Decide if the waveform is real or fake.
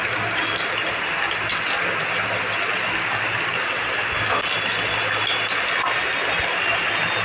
real